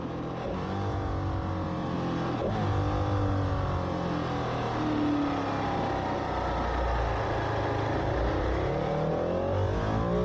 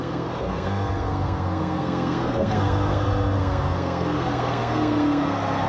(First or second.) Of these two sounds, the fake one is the second